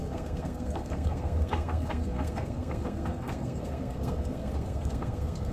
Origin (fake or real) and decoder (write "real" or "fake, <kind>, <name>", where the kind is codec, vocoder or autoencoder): fake, codec, SNAC